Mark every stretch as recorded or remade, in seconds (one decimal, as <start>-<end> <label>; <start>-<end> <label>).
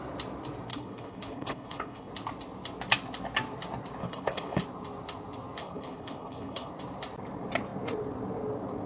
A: 0.0-0.7 recorded; 0.7-2.1 remade; 2.1-4.0 recorded; 4.0-4.6 remade; 4.6-5.6 recorded; 5.6-6.7 remade; 6.7-8.9 recorded